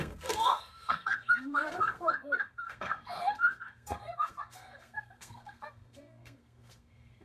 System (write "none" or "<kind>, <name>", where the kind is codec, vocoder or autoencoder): codec, SNAC